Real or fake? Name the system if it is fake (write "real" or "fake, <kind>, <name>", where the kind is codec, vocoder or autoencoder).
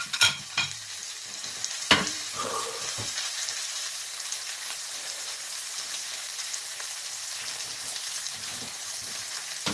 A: fake, vocoder, BigVGAN v2